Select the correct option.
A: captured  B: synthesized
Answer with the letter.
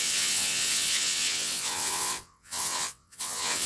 B